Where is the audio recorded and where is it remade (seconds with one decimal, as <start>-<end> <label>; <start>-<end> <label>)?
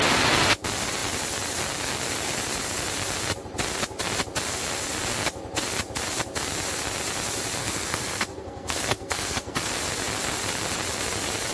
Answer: 0.0-7.6 recorded; 7.6-9.7 remade; 9.7-11.5 recorded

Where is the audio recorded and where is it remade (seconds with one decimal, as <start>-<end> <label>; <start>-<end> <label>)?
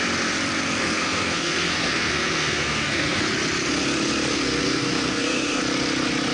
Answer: 0.0-0.8 recorded; 0.8-3.2 remade; 3.2-4.3 recorded; 4.3-5.6 remade; 5.6-6.3 recorded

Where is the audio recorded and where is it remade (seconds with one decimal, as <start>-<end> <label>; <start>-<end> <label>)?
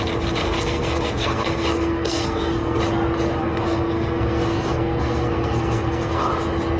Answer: 0.0-0.4 recorded; 0.4-2.8 remade; 2.8-3.4 recorded; 3.4-6.3 remade; 6.3-6.8 recorded